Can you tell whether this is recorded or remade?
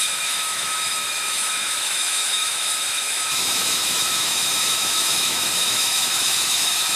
remade